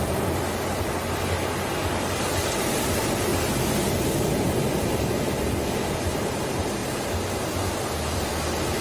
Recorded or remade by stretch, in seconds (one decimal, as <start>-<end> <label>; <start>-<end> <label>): 0.0-3.3 recorded; 3.3-3.9 remade; 3.9-8.8 recorded